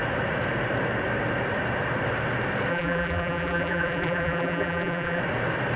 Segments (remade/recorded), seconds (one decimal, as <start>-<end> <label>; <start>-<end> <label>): 0.0-2.7 recorded; 2.7-5.2 remade; 5.2-5.8 recorded